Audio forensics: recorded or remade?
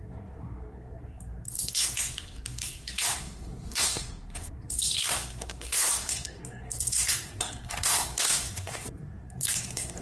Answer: remade